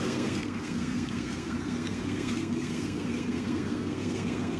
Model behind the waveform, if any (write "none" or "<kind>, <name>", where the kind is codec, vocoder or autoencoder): codec, SNAC